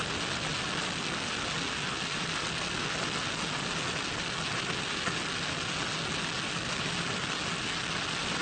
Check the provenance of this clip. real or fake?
real